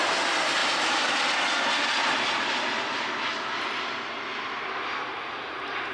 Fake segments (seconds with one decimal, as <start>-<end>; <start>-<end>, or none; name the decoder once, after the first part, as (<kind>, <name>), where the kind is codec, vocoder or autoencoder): none